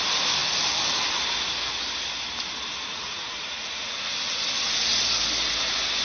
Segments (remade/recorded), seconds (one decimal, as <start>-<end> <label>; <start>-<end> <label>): 0.0-2.9 recorded; 2.9-4.1 remade; 4.1-6.0 recorded